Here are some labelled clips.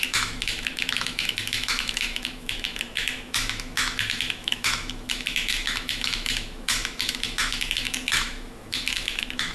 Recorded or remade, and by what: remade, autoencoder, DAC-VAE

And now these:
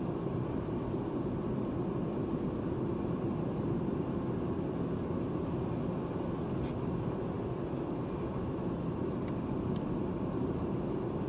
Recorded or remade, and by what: recorded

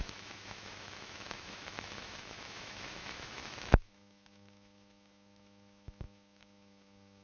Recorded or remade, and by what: remade, autoencoder, DAC-VAE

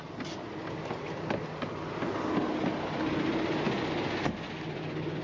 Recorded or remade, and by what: recorded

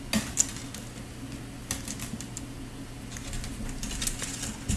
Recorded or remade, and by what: recorded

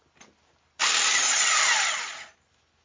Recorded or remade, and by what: recorded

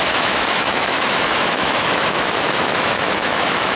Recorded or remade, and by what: remade, autoencoder, DAC-VAE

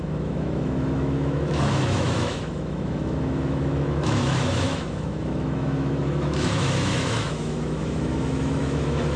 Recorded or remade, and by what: remade, autoencoder, DAC-VAE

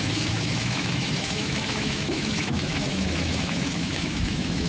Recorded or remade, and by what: remade, autoencoder, DAC-VAE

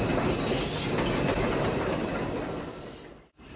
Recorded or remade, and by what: recorded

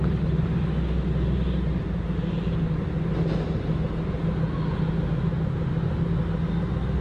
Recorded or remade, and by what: recorded